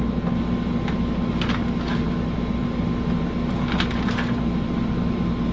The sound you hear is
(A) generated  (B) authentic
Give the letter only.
B